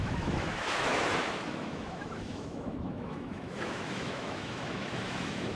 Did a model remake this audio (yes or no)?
yes